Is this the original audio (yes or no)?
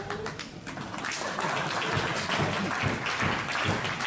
yes